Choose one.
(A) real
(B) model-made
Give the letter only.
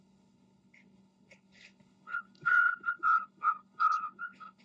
B